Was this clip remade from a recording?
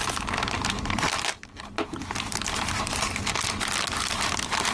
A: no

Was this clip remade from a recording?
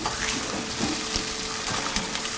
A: no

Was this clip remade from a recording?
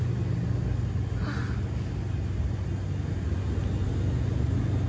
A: no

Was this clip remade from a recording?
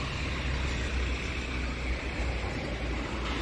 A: no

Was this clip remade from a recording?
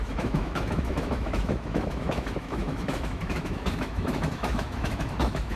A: yes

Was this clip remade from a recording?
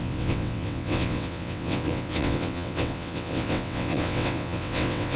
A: yes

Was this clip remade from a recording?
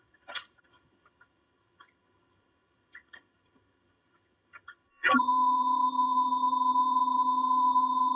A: yes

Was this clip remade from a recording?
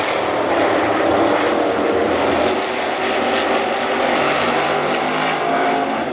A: no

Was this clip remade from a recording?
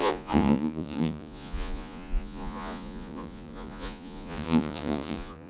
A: yes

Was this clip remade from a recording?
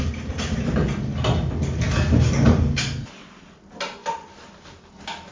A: no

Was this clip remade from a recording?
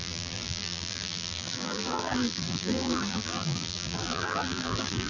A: yes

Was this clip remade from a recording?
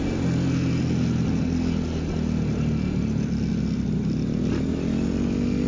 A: no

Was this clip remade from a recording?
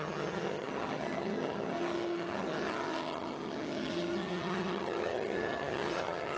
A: yes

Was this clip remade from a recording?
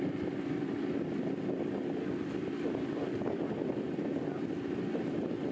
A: no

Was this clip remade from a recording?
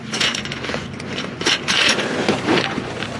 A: yes